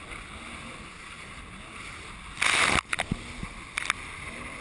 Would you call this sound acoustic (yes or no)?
yes